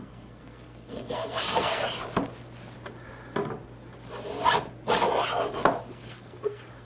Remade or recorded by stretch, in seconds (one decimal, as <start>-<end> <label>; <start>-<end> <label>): 0.0-1.8 remade; 1.8-5.9 recorded; 5.9-6.9 remade